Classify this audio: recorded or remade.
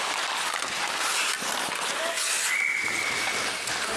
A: recorded